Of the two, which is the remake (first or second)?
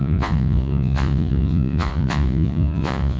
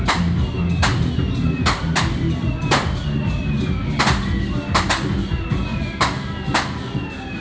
first